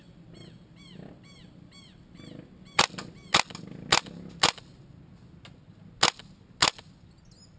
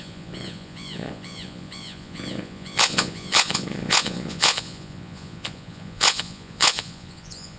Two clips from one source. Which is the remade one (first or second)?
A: second